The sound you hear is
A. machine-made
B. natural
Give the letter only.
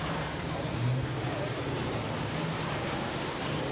A